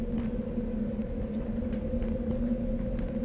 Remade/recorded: recorded